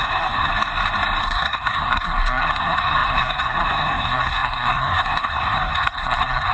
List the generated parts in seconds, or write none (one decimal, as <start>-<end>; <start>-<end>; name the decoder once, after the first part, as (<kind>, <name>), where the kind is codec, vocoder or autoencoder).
0.0-0.5 (codec, SNAC); 1.2-6.5